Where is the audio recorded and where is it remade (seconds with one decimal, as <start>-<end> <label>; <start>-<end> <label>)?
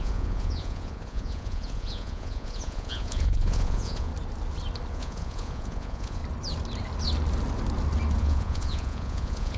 0.0-4.1 remade; 4.1-4.9 recorded; 4.9-6.2 remade; 6.2-8.2 recorded; 8.2-9.6 remade